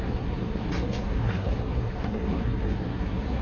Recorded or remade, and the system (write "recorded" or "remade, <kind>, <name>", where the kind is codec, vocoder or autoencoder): remade, codec, SNAC